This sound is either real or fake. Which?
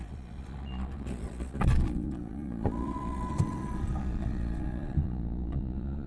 fake